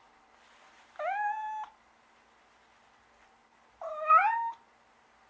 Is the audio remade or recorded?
recorded